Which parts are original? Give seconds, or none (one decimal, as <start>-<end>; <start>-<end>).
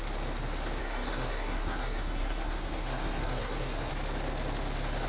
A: 0.0-0.8; 3.9-5.1